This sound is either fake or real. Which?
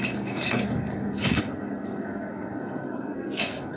fake